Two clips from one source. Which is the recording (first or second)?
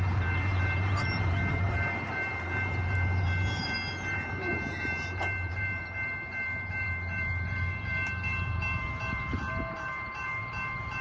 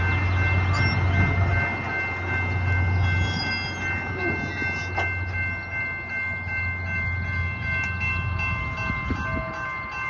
second